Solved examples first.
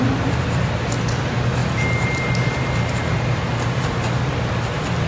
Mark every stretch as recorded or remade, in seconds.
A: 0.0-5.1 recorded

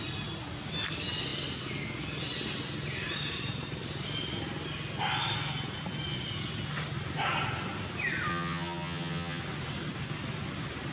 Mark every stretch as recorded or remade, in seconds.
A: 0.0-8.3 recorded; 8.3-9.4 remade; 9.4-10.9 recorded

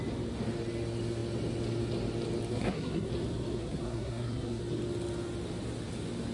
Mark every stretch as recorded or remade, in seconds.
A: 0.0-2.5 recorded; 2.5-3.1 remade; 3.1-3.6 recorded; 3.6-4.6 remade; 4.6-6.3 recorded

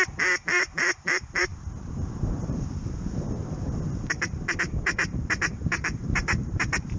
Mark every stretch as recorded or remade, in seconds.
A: 0.0-7.0 remade